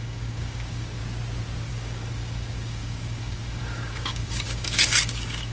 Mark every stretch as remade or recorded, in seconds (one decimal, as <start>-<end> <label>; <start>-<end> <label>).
0.0-1.0 remade; 1.0-1.7 recorded; 1.7-5.5 remade

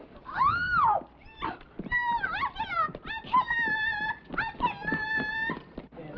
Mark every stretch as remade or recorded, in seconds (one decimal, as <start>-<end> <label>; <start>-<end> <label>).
0.0-6.2 recorded